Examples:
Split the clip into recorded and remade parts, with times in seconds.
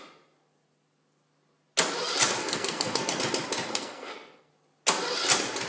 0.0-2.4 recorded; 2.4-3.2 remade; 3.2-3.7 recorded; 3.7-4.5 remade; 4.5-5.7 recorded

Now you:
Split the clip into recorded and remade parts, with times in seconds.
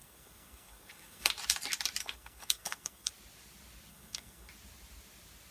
0.0-1.3 remade; 1.3-2.0 recorded; 2.0-3.1 remade; 3.1-3.9 recorded; 3.9-4.5 remade; 4.5-5.5 recorded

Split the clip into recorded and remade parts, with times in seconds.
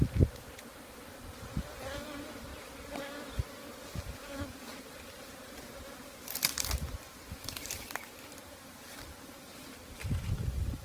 0.0-10.8 recorded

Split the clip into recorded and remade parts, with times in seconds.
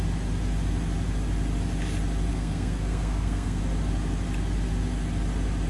0.0-2.3 recorded; 2.3-3.6 remade; 3.6-5.7 recorded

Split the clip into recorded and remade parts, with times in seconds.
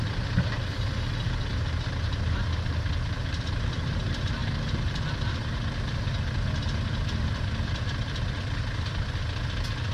0.0-9.9 recorded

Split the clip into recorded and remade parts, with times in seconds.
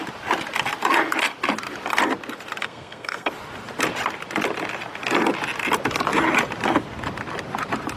0.0-2.6 recorded; 2.6-3.3 remade; 3.3-8.0 recorded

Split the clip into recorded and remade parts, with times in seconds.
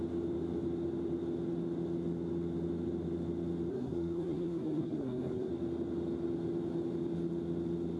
0.0-3.7 recorded; 3.7-5.5 remade; 5.5-8.0 recorded